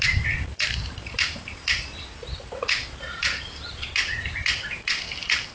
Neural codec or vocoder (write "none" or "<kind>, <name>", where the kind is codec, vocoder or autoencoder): vocoder, BigVGAN v2